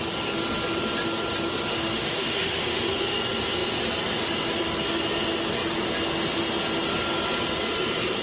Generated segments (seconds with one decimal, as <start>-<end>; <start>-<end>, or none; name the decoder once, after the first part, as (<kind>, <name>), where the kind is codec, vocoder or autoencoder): 1.7-2.8 (autoencoder, DAC-VAE)